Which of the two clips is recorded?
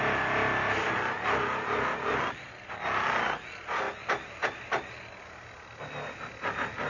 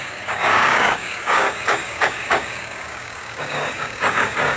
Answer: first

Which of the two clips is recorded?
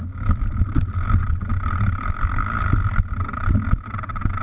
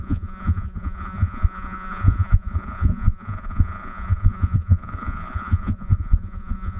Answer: first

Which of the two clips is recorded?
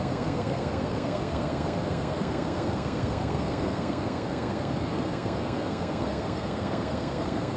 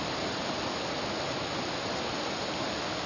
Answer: second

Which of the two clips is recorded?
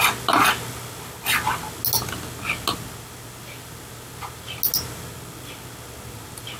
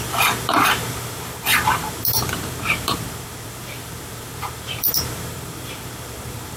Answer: first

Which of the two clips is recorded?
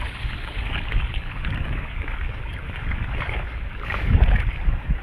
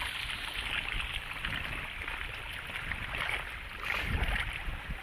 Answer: second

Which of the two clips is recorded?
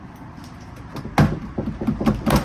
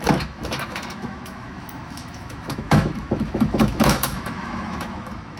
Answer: first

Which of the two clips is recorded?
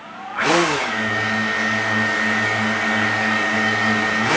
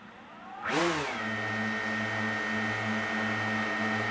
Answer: second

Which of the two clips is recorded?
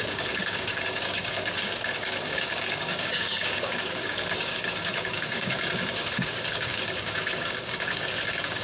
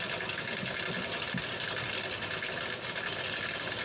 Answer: second